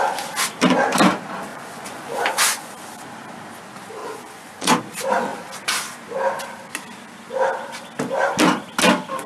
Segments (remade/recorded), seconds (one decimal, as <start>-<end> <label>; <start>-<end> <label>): 0.0-1.5 recorded; 1.5-2.7 remade; 2.7-4.0 recorded; 4.0-4.8 remade; 4.8-9.3 recorded